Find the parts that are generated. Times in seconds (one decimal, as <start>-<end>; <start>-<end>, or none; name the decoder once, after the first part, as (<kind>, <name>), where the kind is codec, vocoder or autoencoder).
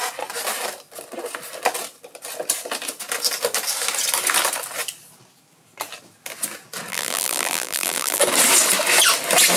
6.9-8.2 (vocoder, BigVGAN v2)